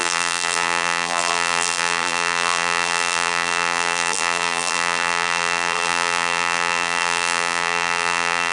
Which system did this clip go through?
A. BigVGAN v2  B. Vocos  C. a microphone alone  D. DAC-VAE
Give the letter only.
A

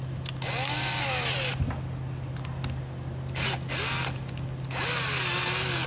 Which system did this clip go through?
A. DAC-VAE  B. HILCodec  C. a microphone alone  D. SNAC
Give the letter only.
C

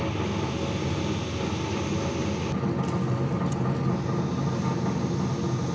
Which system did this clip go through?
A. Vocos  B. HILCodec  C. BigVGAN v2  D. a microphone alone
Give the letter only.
D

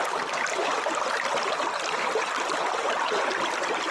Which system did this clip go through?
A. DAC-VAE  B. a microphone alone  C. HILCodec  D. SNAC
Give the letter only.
B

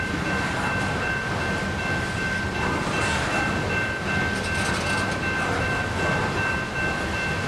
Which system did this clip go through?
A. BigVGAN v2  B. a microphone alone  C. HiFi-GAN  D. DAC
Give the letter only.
B